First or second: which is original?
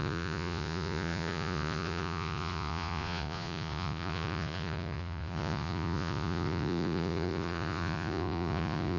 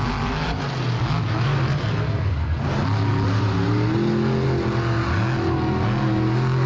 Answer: second